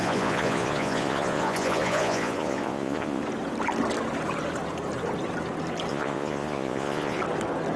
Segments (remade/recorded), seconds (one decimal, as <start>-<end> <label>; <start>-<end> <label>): 0.0-3.2 remade; 3.2-5.9 recorded; 5.9-7.2 remade; 7.2-7.8 recorded

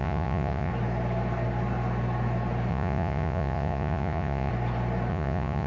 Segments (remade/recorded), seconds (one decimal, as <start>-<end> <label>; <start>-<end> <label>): 0.0-0.7 remade; 0.7-2.7 recorded; 2.7-4.5 remade; 4.5-5.1 recorded; 5.1-5.7 remade